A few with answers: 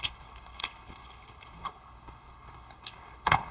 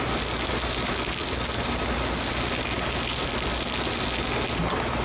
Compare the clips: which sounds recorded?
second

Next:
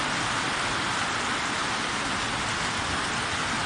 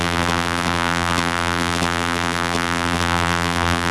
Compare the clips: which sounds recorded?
first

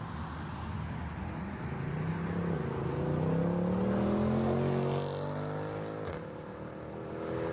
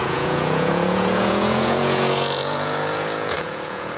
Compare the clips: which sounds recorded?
first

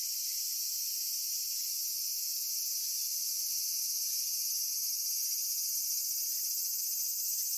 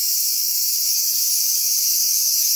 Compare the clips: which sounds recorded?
first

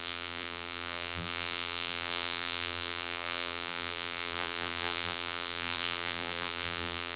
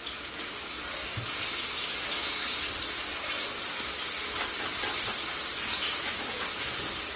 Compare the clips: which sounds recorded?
second